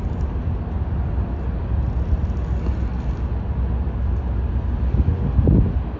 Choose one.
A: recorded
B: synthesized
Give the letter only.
A